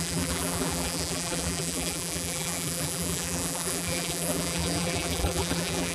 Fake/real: fake